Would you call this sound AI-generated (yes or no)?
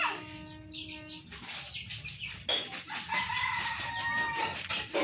no